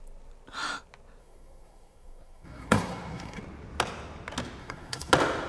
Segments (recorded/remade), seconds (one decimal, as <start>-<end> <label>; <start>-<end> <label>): 0.0-1.2 recorded; 1.2-3.4 remade; 3.4-4.6 recorded; 4.6-5.1 remade; 5.1-5.5 recorded